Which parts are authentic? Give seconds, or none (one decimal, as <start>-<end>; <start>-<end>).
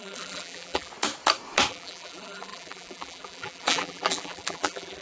0.9-1.7